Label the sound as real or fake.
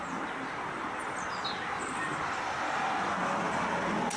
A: real